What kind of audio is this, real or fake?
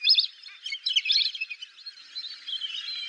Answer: real